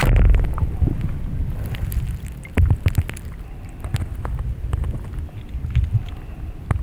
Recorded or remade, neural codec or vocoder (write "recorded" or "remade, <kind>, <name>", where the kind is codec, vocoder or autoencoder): recorded